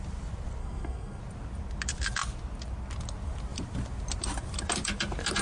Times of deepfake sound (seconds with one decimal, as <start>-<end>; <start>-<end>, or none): 0.6-1.2